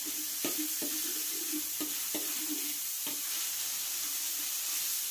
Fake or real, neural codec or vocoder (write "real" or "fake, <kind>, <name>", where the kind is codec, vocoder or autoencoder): fake, vocoder, BigVGAN v2